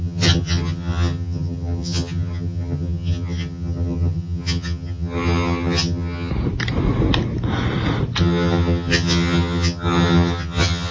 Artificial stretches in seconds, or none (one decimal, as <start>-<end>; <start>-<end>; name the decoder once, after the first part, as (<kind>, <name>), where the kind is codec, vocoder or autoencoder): 0.0-6.3 (vocoder, HiFi-GAN); 8.2-10.9